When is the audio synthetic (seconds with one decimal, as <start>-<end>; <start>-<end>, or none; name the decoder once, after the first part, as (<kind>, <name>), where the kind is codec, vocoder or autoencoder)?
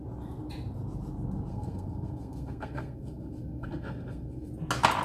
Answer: 1.5-4.5 (codec, SNAC)